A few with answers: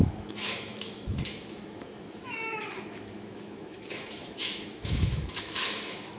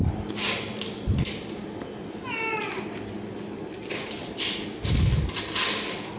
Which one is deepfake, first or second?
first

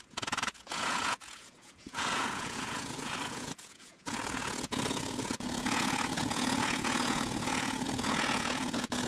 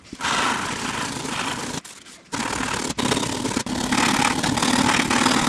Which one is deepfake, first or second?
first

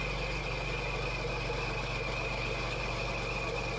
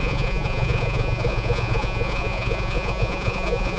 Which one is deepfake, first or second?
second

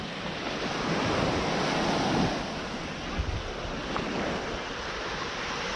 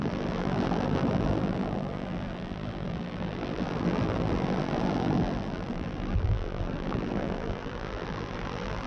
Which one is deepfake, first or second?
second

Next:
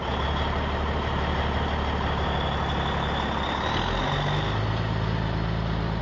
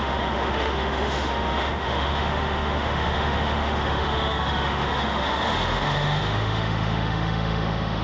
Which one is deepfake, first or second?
second